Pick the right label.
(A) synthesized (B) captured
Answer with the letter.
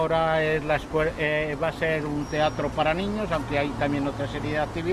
B